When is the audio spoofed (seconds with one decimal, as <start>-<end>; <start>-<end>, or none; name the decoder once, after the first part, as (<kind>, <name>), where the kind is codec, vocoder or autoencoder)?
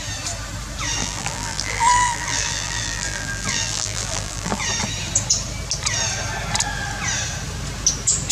1.0-4.6 (vocoder, BigVGAN v2)